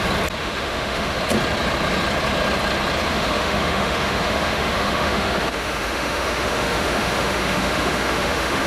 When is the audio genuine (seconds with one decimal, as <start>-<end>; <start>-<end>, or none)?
0.0-0.4; 1.2-3.1

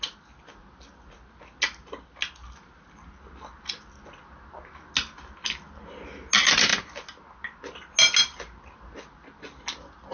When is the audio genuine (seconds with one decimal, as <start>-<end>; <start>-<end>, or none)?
0.0-10.1

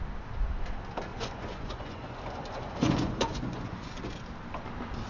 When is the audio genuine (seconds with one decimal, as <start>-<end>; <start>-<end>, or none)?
0.0-1.1; 4.0-5.1

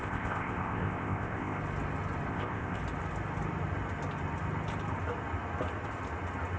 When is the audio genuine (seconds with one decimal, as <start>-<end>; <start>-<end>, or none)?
1.6-2.3; 2.8-6.6

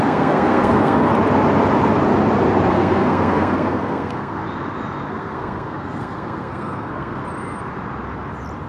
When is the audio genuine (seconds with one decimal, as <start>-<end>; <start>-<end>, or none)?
1.1-2.7; 4.4-5.1; 7.2-8.7